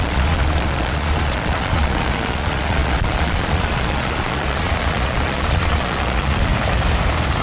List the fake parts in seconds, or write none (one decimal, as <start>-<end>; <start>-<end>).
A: 0.0-6.5